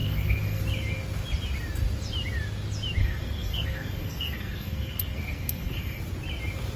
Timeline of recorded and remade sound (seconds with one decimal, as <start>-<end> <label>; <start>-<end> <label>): 0.0-0.6 remade; 0.6-3.0 recorded; 3.0-6.0 remade; 6.0-6.8 recorded